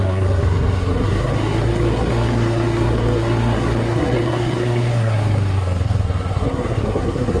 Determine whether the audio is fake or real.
fake